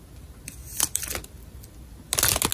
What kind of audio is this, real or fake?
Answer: real